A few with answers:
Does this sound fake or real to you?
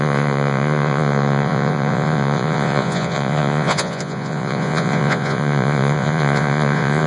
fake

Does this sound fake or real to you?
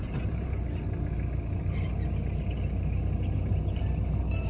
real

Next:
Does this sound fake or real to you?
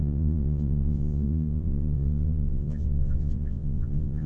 fake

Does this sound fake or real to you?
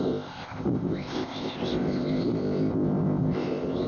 fake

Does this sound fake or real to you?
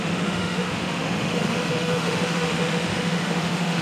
fake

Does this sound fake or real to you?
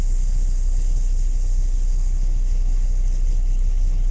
fake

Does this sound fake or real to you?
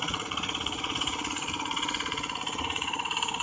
fake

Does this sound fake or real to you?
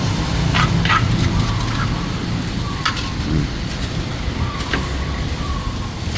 real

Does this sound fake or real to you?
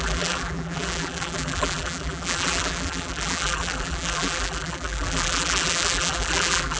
fake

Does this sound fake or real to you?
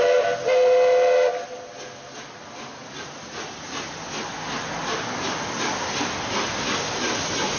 real